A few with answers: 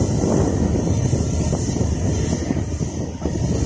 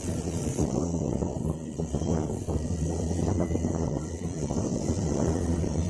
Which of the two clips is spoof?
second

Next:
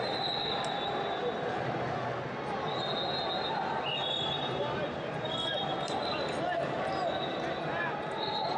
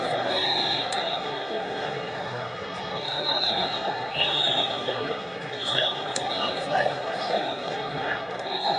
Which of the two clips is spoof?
second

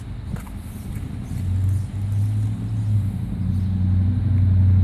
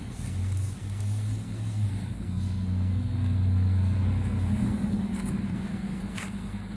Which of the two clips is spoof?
second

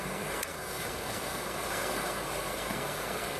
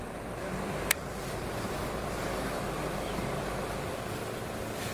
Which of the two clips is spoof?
first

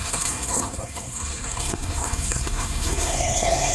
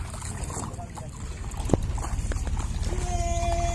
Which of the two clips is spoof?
first